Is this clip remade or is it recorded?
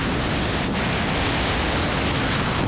recorded